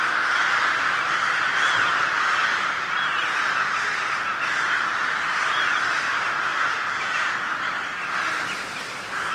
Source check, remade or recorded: recorded